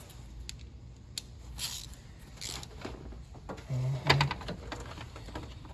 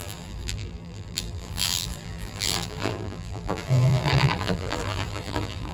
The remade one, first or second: second